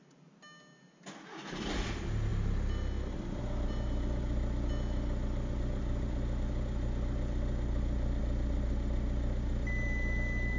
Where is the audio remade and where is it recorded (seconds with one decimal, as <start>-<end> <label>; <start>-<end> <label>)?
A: 0.0-10.6 recorded